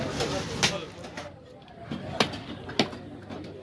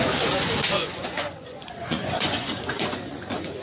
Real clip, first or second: first